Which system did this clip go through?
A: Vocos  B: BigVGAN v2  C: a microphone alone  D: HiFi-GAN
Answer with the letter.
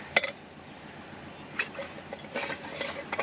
C